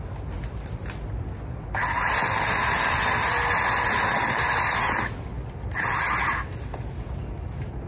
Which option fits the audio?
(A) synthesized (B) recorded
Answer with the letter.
B